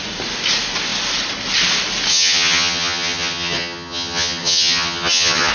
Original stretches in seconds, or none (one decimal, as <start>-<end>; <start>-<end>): 0.0-2.1